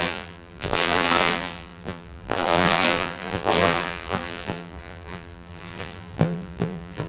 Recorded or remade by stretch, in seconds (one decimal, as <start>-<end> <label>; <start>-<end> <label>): 0.0-7.1 remade